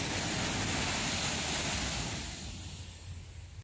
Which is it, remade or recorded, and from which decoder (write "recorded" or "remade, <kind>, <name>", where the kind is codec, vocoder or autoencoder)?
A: recorded